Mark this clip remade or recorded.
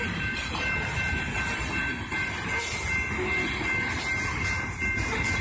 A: recorded